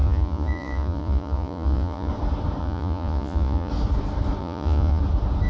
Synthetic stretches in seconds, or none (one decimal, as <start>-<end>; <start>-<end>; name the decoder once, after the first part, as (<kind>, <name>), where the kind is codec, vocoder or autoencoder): 0.0-2.1 (vocoder, Vocos); 2.6-3.7; 4.4-5.0